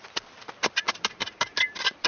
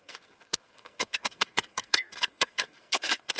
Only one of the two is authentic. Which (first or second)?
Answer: first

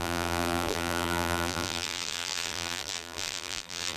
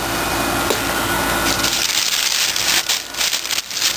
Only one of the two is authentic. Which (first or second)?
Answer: second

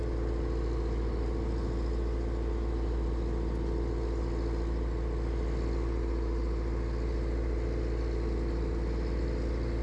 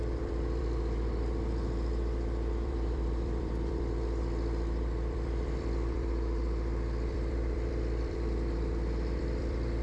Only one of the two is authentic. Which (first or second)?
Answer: first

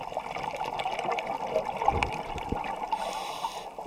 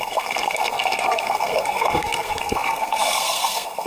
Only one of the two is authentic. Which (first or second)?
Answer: first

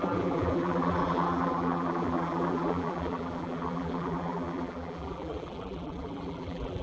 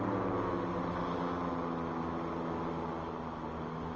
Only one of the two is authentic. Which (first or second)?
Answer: second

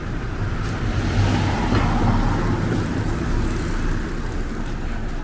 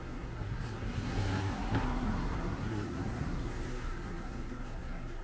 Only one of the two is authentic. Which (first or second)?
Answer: first